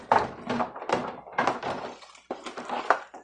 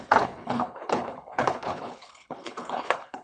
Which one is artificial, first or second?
second